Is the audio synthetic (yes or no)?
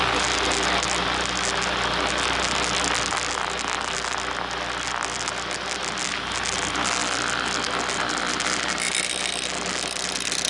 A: no